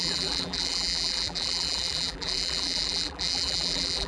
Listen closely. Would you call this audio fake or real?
fake